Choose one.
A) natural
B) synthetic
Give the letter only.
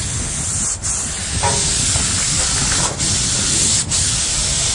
A